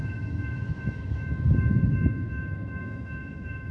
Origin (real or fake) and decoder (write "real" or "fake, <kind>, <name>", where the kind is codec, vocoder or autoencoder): fake, autoencoder, DAC-VAE